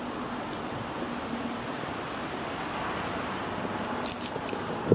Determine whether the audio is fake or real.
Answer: real